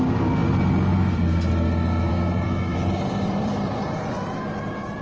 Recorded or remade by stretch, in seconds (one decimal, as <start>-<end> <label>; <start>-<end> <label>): 0.0-2.7 recorded; 2.7-4.3 remade; 4.3-5.0 recorded